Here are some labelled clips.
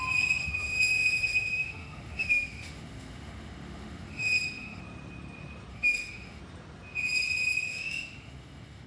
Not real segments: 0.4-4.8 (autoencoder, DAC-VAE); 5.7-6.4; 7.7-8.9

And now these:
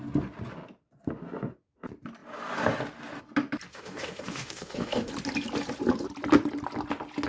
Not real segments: 3.7-5.1 (autoencoder, DAC-VAE)